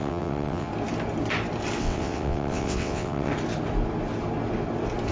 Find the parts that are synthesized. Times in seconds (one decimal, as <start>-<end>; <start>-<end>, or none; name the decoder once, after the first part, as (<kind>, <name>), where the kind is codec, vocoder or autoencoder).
0.0-0.7 (vocoder, WaveNeXt); 1.8-3.3